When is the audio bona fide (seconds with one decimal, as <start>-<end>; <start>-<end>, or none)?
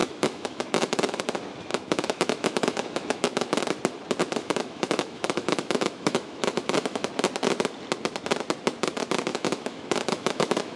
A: 1.2-1.7; 3.6-4.4; 7.1-9.3